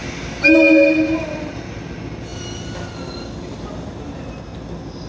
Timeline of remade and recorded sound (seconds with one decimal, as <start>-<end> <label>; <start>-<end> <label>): 0.0-5.1 recorded